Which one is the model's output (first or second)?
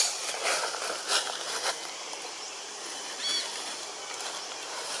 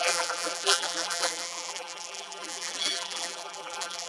second